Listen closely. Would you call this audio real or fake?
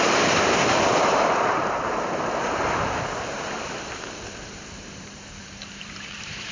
fake